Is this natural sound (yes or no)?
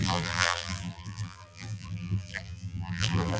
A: no